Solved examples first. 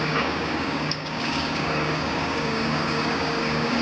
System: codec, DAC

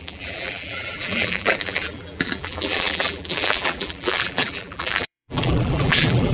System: vocoder, BigVGAN v2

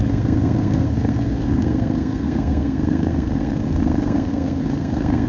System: codec, SNAC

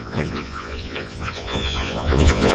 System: vocoder, Vocos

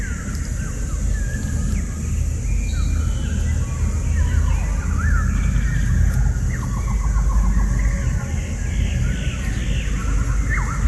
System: none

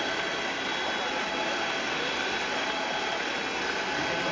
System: none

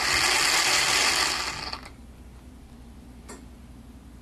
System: none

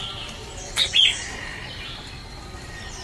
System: none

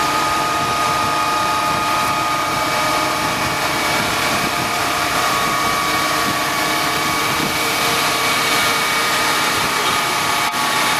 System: vocoder, BigVGAN v2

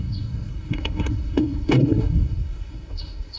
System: codec, SNAC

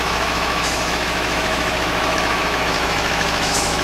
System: autoencoder, DAC-VAE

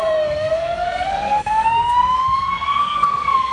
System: codec, SNAC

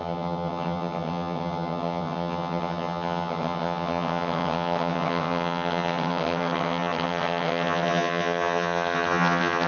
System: vocoder, HiFi-GAN